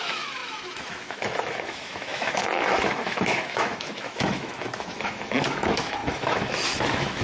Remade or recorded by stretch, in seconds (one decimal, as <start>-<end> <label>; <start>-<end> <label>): 0.0-7.2 remade